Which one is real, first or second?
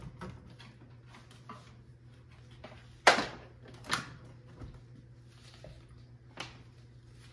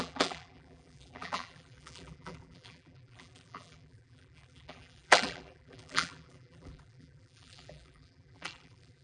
first